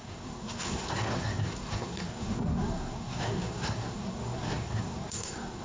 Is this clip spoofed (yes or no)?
yes